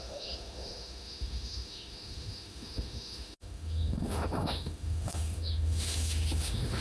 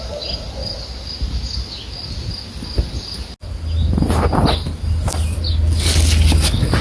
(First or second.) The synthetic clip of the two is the first